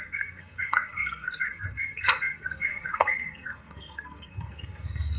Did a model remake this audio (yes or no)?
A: yes